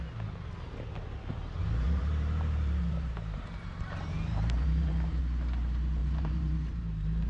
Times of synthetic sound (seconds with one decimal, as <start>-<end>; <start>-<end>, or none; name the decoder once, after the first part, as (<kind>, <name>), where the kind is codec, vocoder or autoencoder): 1.6-5.2 (vocoder, BigVGAN v2); 6.0-7.3